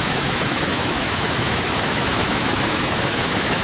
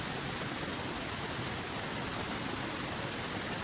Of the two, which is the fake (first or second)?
first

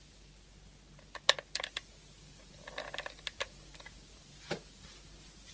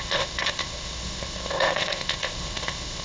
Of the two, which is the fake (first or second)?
second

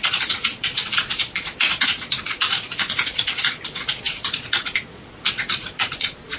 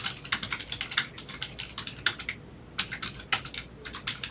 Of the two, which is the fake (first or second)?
first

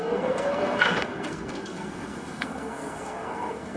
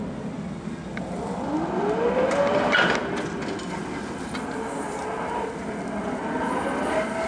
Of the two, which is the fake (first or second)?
first